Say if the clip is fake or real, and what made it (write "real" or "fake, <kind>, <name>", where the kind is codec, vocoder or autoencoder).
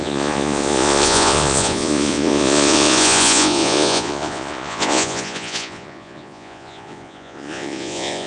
fake, vocoder, Vocos